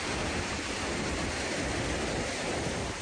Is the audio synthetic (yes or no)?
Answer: no